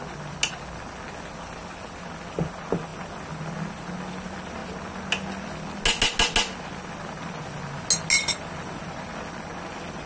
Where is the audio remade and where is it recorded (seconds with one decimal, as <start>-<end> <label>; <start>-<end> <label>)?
0.0-10.1 recorded